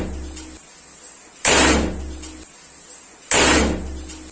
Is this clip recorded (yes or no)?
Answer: yes